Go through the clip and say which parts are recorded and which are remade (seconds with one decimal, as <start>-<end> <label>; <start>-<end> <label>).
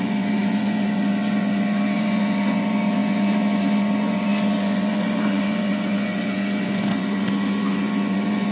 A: 0.0-8.5 remade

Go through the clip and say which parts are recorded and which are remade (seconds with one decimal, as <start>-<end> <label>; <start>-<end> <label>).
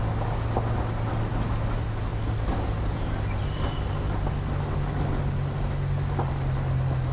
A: 0.0-7.1 recorded